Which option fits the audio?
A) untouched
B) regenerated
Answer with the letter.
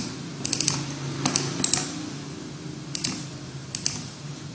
A